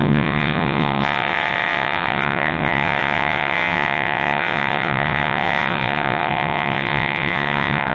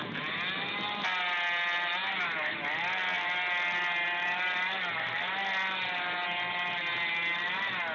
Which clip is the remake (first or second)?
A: first